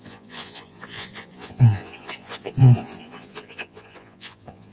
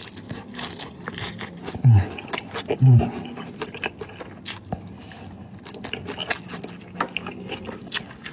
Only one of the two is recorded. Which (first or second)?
second